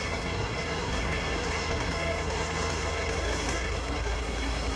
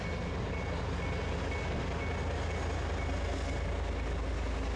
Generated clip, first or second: first